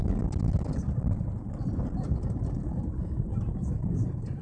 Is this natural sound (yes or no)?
yes